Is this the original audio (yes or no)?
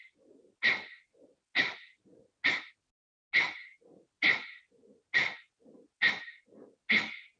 yes